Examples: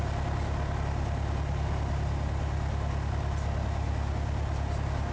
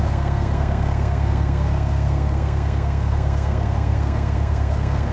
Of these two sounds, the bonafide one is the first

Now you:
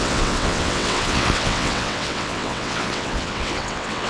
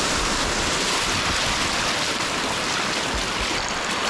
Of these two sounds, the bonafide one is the second